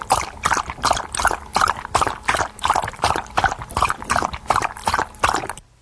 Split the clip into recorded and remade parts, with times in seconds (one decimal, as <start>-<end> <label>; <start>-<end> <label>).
0.0-5.8 recorded